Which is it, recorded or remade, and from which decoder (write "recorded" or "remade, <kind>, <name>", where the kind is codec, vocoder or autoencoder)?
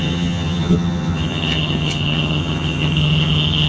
remade, vocoder, HiFi-GAN